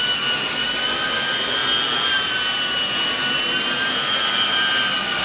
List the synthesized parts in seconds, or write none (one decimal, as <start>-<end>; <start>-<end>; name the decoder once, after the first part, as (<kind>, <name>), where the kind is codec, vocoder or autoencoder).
none